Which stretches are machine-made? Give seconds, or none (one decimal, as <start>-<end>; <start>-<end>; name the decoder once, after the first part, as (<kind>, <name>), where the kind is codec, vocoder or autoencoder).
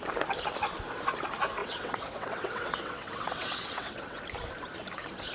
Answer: 1.6-4.2 (vocoder, WaveNeXt)